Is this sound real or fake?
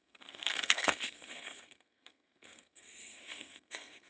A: fake